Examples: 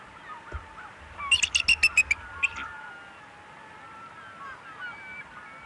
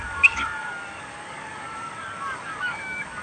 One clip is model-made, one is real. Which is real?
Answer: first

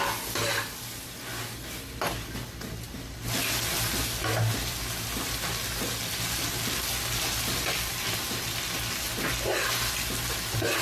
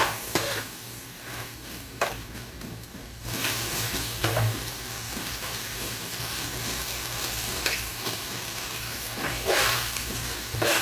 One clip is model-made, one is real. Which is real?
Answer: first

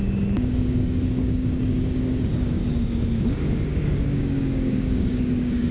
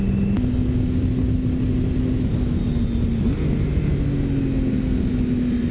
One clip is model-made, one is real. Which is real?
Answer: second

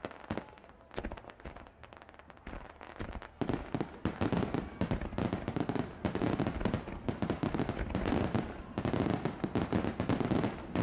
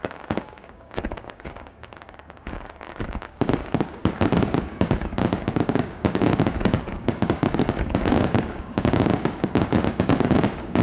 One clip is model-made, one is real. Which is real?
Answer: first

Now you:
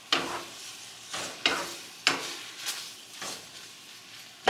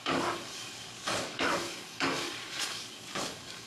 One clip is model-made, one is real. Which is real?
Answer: first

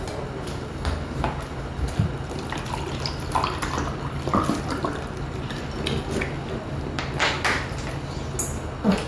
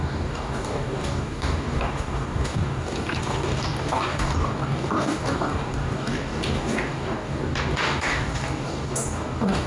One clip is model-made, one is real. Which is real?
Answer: first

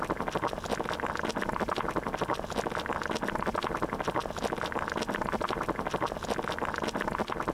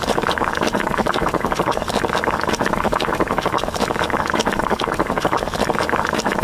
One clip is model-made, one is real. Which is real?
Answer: first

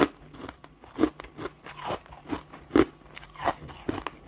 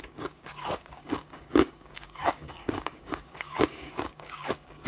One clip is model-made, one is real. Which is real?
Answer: first